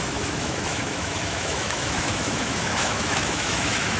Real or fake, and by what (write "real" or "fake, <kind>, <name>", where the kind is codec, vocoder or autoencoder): fake, autoencoder, DAC-VAE